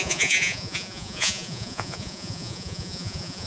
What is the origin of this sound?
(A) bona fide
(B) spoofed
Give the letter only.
B